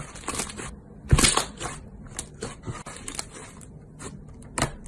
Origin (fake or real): real